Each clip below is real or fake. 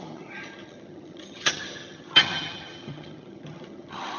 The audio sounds fake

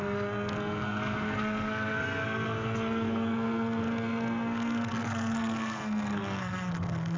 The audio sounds fake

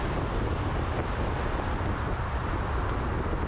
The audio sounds real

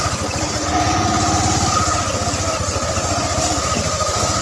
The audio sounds real